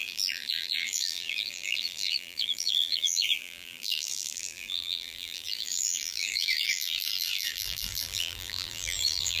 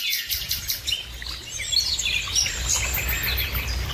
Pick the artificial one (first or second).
first